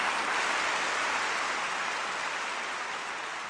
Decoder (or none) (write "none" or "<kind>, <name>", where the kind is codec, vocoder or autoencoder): none